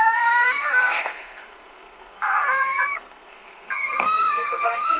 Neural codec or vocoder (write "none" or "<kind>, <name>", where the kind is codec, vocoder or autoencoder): codec, SNAC